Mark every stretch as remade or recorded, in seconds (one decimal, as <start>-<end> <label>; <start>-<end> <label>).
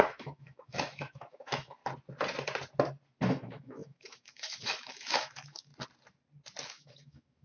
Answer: 0.0-1.8 remade; 1.8-3.3 recorded; 3.3-5.7 remade; 5.7-6.6 recorded; 6.6-7.4 remade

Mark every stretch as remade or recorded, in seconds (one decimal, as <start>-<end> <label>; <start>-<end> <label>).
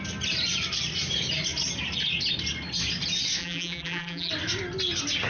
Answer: 0.0-3.4 recorded; 3.4-4.3 remade; 4.3-5.3 recorded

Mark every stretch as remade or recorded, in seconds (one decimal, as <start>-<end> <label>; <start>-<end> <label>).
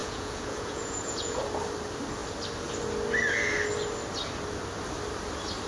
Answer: 0.0-1.4 remade; 1.4-5.7 recorded